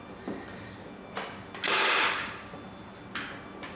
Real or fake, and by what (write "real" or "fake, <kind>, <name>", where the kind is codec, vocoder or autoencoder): real